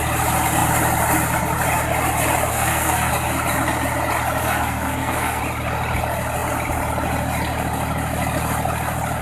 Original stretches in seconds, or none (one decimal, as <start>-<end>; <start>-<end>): 0.0-2.5; 3.1-4.4; 5.4-9.2